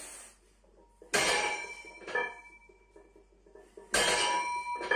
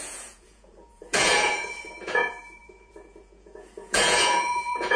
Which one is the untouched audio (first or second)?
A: first